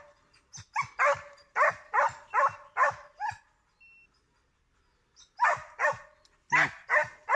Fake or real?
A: real